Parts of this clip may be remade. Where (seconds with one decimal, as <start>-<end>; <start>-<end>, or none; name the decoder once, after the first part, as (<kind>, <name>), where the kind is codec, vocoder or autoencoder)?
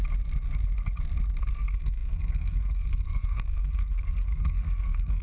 1.4-5.2 (codec, SNAC)